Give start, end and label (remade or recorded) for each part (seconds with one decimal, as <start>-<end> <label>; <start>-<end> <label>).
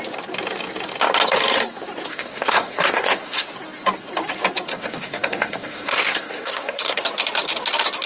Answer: 0.0-2.1 recorded; 2.1-3.5 remade; 3.5-4.7 recorded; 4.7-7.0 remade; 7.0-8.1 recorded